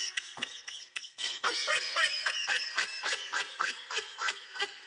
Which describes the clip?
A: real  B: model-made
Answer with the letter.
B